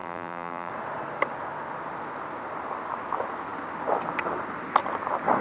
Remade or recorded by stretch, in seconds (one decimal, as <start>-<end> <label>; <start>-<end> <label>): 0.0-0.7 remade; 0.7-5.4 recorded